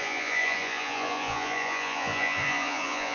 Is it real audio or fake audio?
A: fake